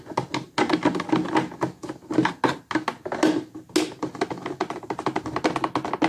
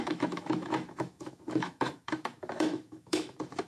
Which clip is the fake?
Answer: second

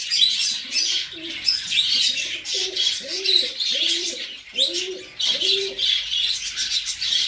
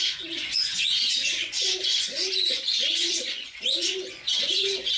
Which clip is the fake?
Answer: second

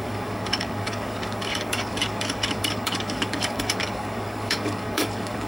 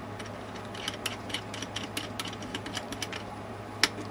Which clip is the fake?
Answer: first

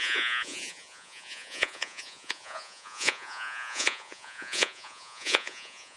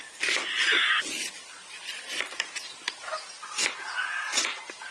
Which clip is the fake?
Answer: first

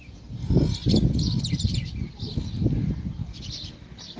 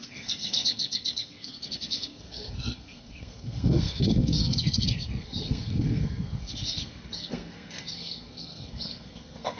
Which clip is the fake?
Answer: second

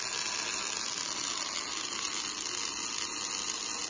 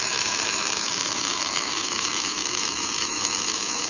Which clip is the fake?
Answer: second